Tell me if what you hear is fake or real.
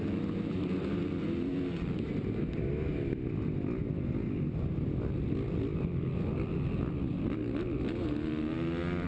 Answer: real